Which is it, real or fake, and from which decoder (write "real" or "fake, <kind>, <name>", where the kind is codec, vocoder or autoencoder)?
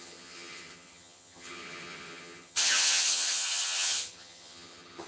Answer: fake, vocoder, HiFi-GAN